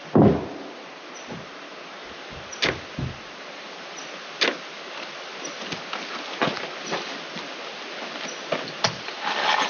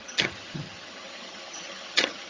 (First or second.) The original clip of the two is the first